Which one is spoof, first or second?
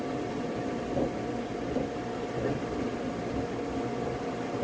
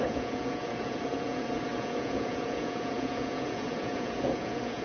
second